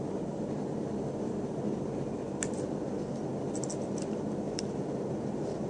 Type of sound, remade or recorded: recorded